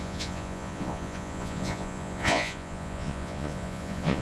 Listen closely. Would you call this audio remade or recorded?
remade